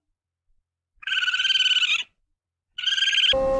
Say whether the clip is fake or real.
real